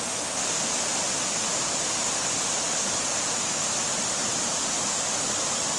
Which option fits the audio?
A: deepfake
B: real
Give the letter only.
B